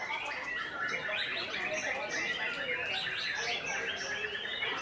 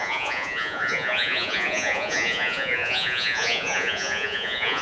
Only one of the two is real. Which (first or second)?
first